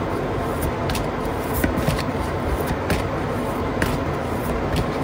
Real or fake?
real